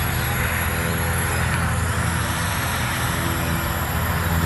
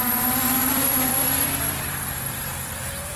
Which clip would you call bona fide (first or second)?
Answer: first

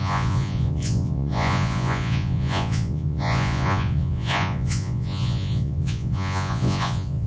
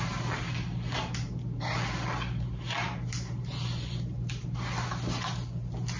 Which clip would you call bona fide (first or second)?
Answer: second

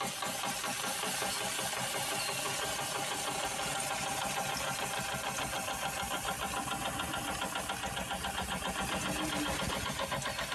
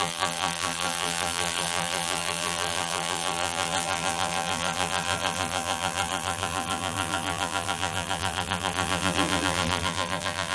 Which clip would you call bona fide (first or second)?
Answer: first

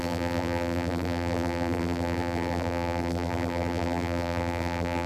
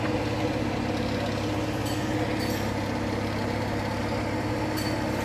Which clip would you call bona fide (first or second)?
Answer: second